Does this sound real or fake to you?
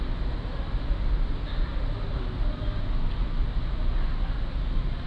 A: real